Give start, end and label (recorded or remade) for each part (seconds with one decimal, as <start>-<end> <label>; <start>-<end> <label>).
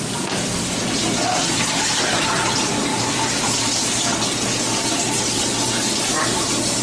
0.0-2.9 recorded; 2.9-3.6 remade; 3.6-6.1 recorded; 6.1-6.8 remade